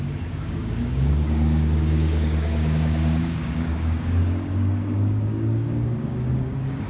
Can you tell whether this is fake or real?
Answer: fake